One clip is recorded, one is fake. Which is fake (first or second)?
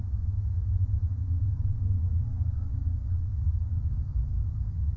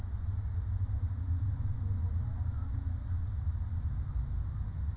first